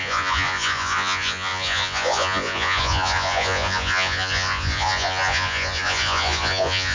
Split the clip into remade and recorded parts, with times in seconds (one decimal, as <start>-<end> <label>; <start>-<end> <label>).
0.0-6.9 remade

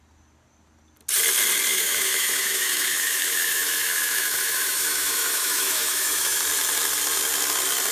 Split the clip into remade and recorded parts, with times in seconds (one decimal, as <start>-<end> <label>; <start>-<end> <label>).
0.0-1.7 recorded; 1.7-6.4 remade; 6.4-7.9 recorded